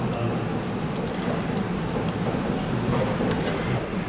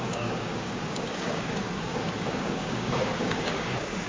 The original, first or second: first